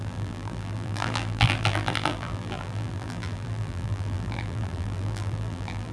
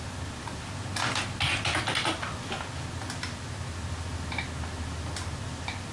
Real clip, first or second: second